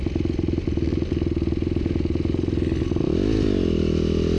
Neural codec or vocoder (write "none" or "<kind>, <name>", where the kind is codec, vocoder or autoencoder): none